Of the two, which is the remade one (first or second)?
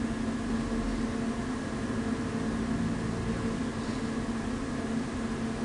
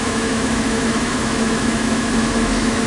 second